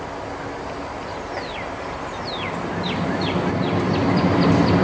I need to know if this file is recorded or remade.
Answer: recorded